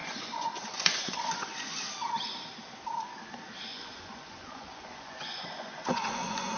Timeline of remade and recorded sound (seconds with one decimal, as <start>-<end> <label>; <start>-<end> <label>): 0.0-1.8 remade; 1.8-3.7 recorded; 3.7-6.6 remade